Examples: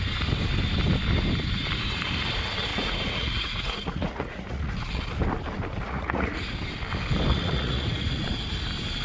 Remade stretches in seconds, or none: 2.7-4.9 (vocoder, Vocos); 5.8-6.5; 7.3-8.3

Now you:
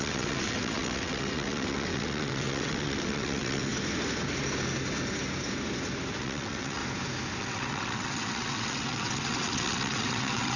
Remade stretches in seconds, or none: 0.0-3.7 (vocoder, WaveNeXt); 6.2-6.8; 7.4-10.6

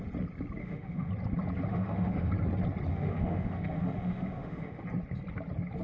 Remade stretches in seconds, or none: 0.6-1.1 (autoencoder, DAC-VAE); 1.7-2.3; 2.9-4.8

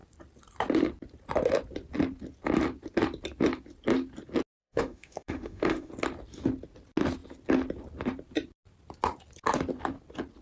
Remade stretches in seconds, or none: 4.6-5.9 (autoencoder, DAC-VAE)

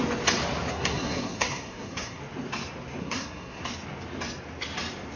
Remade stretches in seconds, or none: 0.7-2.2 (codec, SNAC); 3.0-3.6

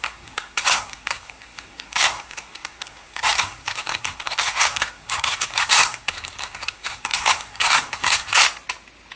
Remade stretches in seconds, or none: 0.0-8.4 (codec, SNAC)